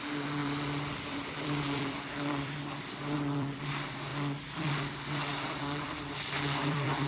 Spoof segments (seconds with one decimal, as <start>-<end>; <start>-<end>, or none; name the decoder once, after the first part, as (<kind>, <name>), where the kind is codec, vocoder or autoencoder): 0.0-7.1 (vocoder, BigVGAN v2)